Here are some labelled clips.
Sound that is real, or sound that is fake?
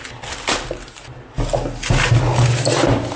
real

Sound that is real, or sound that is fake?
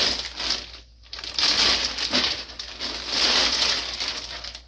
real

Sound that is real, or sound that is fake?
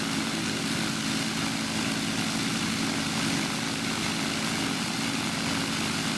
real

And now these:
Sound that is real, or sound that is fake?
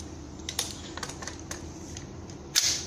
real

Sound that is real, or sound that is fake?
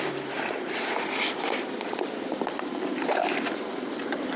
fake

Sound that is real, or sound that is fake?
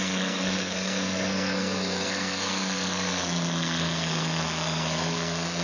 fake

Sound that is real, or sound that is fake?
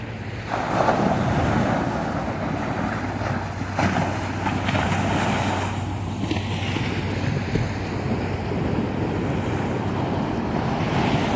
real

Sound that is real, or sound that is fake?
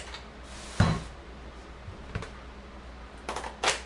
real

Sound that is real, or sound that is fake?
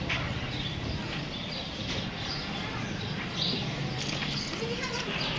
fake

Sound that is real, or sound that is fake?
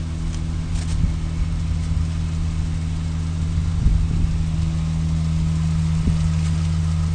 real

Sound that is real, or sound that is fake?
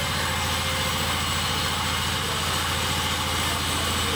real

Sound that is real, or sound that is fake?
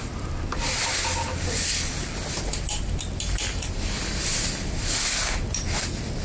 real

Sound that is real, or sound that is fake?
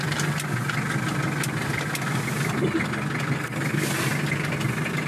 real